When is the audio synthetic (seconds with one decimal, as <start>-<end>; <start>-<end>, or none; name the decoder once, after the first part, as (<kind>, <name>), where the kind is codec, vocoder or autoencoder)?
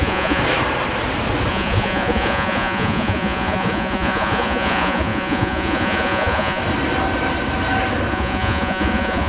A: 0.0-0.4 (vocoder, Vocos); 1.5-6.6; 8.1-9.3